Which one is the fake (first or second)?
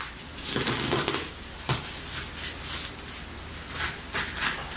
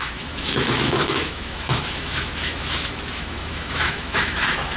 second